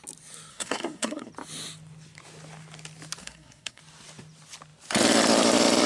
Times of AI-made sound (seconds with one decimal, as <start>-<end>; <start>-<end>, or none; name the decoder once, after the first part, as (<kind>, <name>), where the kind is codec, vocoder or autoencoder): 0.5-1.3 (codec, SNAC); 3.2-3.8